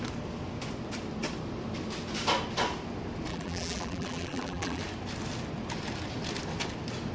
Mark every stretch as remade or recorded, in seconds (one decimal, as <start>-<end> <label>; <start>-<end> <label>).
0.0-3.3 recorded; 3.3-4.8 remade; 4.8-7.1 recorded